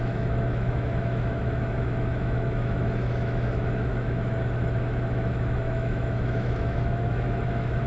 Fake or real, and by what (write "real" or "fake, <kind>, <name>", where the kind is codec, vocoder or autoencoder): fake, autoencoder, DAC-VAE